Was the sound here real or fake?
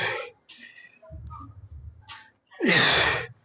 real